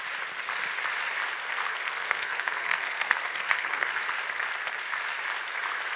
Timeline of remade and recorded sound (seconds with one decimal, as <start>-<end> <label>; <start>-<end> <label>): 0.0-1.4 recorded; 1.4-4.0 remade; 4.0-6.0 recorded